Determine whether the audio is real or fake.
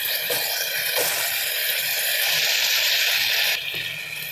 real